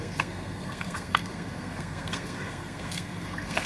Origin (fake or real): fake